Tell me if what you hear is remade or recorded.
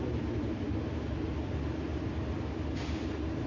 recorded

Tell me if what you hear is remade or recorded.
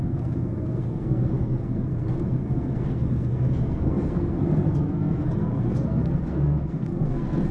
remade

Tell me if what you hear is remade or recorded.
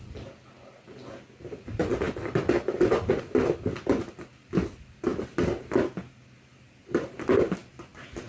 recorded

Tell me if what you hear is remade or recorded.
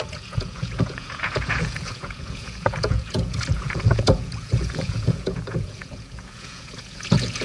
remade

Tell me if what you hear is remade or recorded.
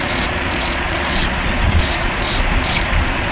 remade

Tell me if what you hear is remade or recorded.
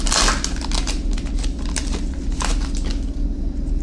recorded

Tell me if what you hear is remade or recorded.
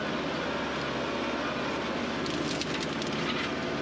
recorded